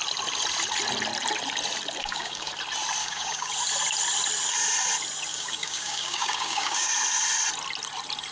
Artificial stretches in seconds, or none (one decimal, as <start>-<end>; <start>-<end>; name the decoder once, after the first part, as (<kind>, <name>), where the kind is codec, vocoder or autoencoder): 2.0-2.5 (codec, DAC); 3.0-3.5; 5.3-6.9